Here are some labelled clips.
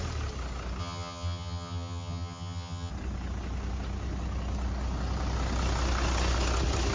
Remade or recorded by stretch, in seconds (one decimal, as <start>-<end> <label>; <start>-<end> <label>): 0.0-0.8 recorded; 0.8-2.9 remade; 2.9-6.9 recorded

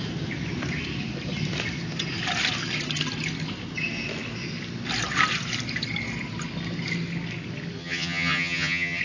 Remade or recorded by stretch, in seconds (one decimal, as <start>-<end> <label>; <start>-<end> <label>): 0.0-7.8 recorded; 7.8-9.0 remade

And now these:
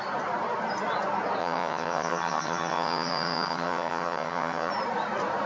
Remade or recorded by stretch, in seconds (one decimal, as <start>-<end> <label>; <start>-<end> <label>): 0.0-1.4 recorded; 1.4-4.7 remade; 4.7-5.5 recorded